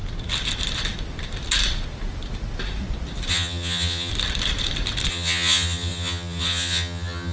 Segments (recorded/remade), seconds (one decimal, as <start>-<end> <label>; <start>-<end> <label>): 0.0-3.3 recorded; 3.3-4.1 remade; 4.1-5.1 recorded; 5.1-7.3 remade